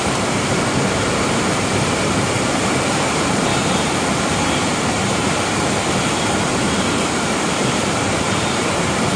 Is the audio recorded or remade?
remade